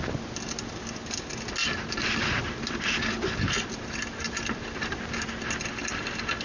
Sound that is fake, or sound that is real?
real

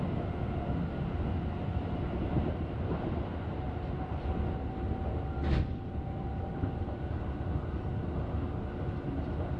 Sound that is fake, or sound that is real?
real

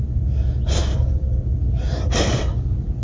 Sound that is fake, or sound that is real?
real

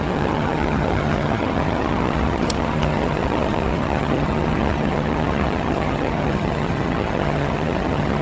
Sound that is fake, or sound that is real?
fake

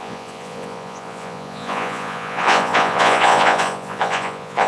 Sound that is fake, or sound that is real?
fake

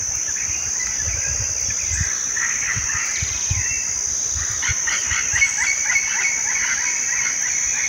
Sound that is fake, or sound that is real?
real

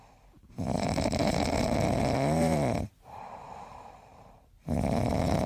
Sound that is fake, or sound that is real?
fake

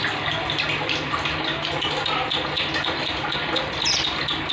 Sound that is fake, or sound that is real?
real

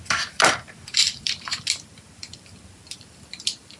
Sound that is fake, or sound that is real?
fake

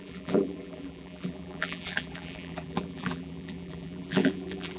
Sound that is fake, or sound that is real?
fake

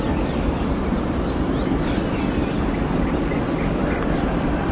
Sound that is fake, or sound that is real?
real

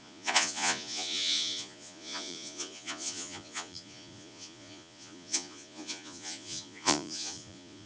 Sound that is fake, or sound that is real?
fake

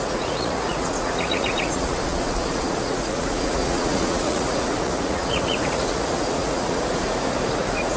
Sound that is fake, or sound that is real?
fake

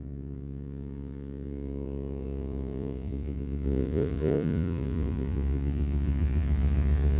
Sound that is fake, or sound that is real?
fake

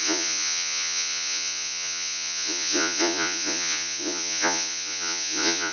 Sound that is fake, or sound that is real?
fake